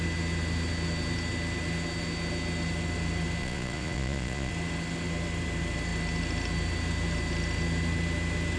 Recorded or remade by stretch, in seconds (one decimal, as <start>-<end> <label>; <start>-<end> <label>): 0.0-3.4 recorded; 3.4-4.5 remade; 4.5-8.6 recorded